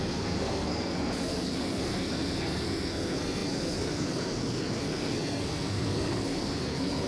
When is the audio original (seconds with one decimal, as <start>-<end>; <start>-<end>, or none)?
none